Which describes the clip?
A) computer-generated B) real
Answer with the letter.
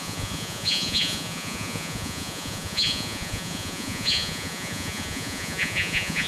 A